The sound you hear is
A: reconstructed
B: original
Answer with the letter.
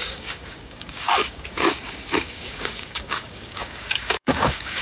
A